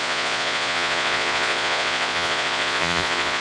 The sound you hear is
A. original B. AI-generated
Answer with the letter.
B